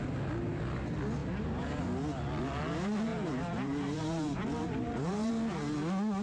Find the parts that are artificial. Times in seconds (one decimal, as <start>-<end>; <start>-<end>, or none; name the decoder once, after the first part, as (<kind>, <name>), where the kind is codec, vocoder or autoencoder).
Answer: 1.2-1.8 (vocoder, BigVGAN v2); 3.1-5.3